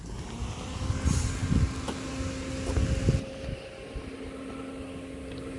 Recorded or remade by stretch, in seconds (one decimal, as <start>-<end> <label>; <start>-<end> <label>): 0.0-5.6 recorded